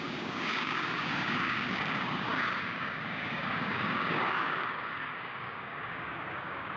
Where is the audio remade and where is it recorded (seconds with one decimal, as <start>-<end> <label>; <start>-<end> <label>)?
0.0-6.8 remade

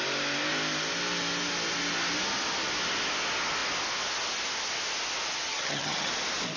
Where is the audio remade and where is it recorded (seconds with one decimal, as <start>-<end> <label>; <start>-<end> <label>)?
0.0-5.5 recorded; 5.5-6.1 remade; 6.1-6.6 recorded

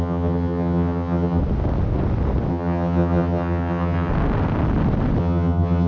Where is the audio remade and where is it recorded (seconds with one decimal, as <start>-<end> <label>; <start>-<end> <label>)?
0.0-1.4 remade; 1.4-2.5 recorded; 2.5-4.1 remade; 4.1-5.2 recorded; 5.2-5.9 remade

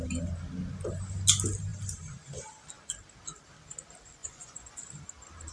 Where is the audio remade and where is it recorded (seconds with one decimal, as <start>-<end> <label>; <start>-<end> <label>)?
0.0-4.2 recorded; 4.2-4.8 remade; 4.8-5.5 recorded

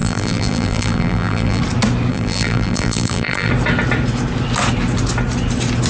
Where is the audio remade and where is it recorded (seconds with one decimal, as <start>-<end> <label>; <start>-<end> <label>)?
0.0-1.6 remade; 1.6-2.1 recorded; 2.1-3.5 remade; 3.5-5.9 recorded

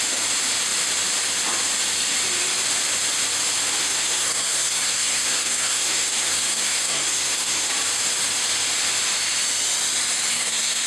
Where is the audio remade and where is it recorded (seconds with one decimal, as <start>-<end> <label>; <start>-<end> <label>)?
0.0-3.8 recorded; 3.8-7.7 remade; 7.7-10.3 recorded; 10.3-10.9 remade

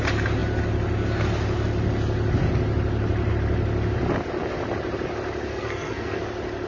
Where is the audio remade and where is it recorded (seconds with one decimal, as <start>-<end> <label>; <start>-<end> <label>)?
0.0-5.5 recorded; 5.5-6.2 remade; 6.2-6.7 recorded

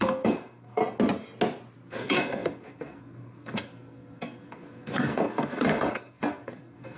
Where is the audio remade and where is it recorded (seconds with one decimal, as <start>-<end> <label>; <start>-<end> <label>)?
0.0-0.8 remade; 0.8-1.9 recorded; 1.9-7.0 remade